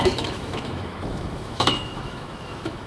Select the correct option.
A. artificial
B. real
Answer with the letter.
A